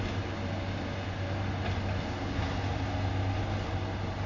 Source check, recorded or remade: recorded